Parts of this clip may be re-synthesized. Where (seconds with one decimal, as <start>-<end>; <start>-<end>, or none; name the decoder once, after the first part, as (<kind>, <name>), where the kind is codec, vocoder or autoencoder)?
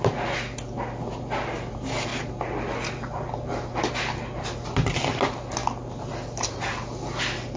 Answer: none